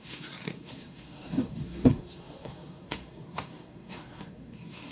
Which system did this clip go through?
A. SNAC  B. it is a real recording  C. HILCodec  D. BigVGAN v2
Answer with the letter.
A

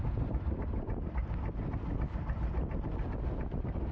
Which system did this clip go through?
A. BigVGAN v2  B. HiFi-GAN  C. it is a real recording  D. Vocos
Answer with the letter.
C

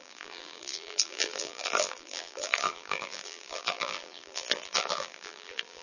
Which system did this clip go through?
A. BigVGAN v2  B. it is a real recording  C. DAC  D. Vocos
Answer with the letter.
A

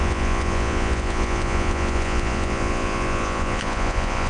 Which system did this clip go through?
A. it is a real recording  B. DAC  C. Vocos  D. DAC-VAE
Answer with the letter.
C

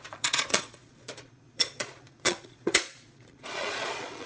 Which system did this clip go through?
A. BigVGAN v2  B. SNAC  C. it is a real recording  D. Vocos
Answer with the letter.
D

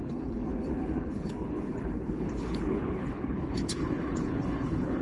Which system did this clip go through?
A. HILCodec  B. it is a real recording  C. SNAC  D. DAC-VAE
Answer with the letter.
A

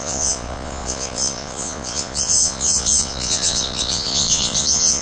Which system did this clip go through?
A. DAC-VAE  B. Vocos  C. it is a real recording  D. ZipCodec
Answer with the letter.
B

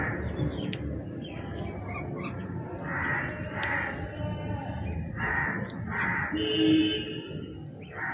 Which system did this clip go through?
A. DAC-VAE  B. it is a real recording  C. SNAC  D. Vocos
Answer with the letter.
B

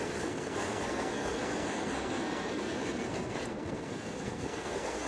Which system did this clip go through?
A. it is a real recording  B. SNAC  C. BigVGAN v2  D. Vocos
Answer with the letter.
B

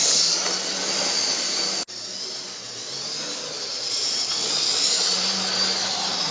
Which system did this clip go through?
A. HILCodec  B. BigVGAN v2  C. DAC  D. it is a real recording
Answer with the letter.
D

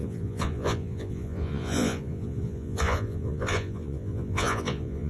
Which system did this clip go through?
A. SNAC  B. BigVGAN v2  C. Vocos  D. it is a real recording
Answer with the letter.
C